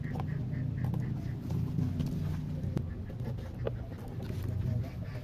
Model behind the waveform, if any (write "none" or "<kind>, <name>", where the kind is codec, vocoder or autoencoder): vocoder, BigVGAN v2